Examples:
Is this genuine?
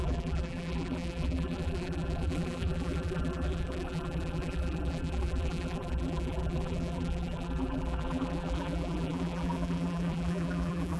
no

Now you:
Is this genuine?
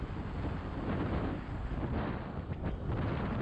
yes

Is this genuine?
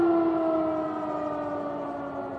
yes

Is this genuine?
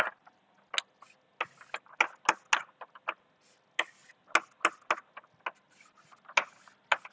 yes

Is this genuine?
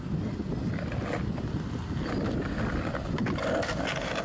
yes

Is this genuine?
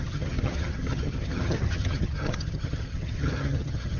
no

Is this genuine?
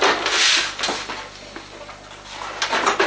yes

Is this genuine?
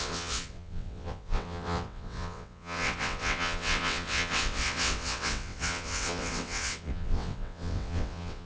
no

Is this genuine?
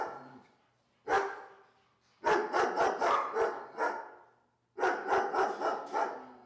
yes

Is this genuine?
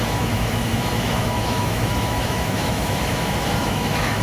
no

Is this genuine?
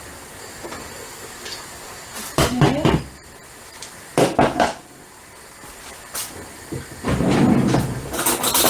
yes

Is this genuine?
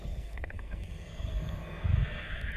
no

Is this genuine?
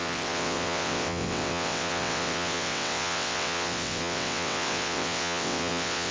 no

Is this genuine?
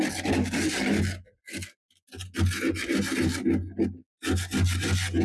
yes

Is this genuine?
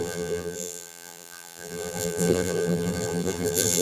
no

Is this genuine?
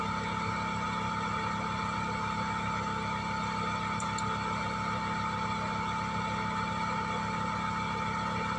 yes